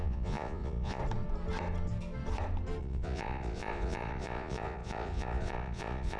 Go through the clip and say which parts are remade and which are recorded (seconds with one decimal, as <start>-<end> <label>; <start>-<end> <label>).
0.0-1.0 remade; 1.0-2.8 recorded; 2.8-6.2 remade